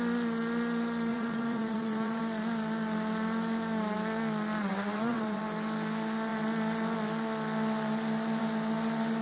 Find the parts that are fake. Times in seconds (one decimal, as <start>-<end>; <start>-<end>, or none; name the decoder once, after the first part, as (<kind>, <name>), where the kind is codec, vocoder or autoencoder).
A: 1.1-2.2 (vocoder, WaveNeXt); 4.6-5.4